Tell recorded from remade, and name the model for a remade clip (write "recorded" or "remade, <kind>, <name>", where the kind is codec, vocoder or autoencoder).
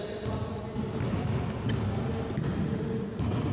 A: recorded